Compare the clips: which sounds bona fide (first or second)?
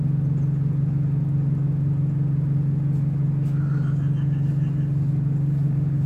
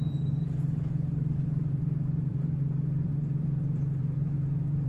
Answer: first